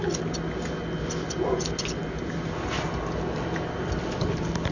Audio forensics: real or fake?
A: real